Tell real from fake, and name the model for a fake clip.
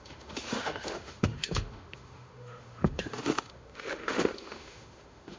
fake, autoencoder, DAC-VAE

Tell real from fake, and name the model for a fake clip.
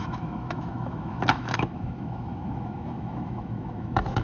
fake, autoencoder, DAC-VAE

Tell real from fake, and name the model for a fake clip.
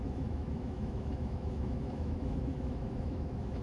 fake, autoencoder, DAC-VAE